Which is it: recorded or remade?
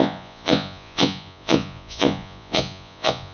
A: remade